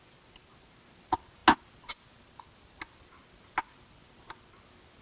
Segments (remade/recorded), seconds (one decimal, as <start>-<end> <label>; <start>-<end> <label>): 0.0-5.0 recorded